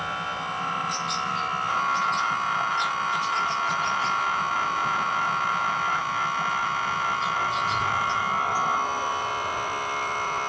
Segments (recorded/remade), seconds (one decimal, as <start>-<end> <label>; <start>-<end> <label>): 0.0-10.5 recorded